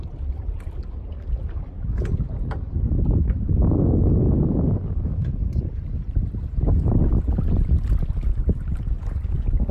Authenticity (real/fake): real